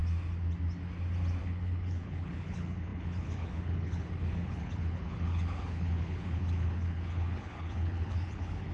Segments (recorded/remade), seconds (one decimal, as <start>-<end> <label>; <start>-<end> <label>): 0.0-1.4 recorded; 1.4-8.7 remade

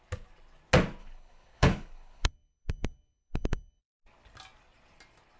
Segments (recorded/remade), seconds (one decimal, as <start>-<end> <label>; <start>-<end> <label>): 0.0-1.0 recorded; 1.0-3.8 remade; 3.8-5.4 recorded

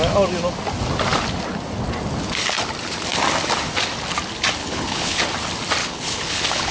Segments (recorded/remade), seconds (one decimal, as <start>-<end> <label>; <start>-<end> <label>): 0.0-4.6 recorded; 4.6-5.2 remade; 5.2-5.8 recorded; 5.8-6.7 remade

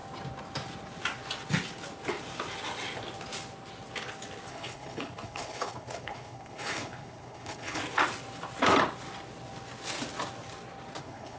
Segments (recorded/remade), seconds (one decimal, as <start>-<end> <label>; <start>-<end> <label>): 0.0-4.5 recorded; 4.5-7.8 remade; 7.8-11.0 recorded; 11.0-11.4 remade